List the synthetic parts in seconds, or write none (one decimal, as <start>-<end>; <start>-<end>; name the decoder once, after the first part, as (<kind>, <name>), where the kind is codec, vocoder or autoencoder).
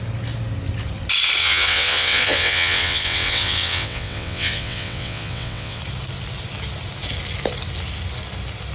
1.4-5.8 (vocoder, WaveNeXt)